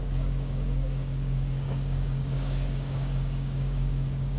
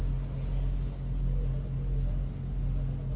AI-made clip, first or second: first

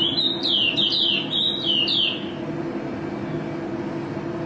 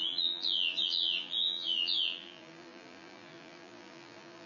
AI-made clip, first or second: second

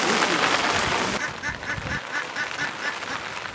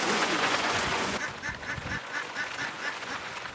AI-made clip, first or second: second